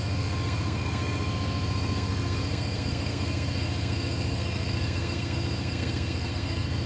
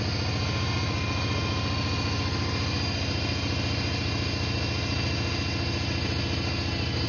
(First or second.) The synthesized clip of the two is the first